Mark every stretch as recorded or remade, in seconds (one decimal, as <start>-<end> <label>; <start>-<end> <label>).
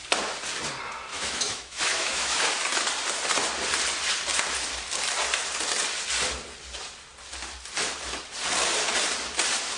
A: 0.0-1.1 recorded; 1.1-2.5 remade; 2.5-9.8 recorded